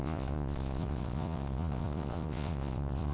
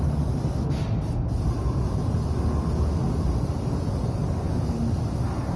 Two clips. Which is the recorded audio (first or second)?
second